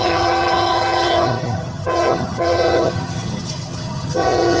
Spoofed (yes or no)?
yes